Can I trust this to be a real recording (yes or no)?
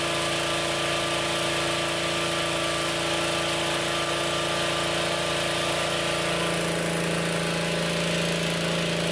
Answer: yes